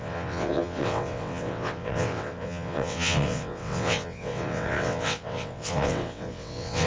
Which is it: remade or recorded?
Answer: remade